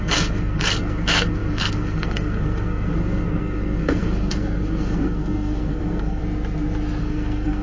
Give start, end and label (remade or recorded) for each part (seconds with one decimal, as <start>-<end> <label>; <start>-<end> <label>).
0.0-6.2 remade; 6.2-7.0 recorded; 7.0-7.6 remade